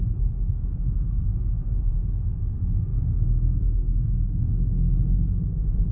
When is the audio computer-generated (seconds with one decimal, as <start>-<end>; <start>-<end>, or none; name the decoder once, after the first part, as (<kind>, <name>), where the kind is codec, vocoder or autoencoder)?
0.0-5.9 (codec, SNAC)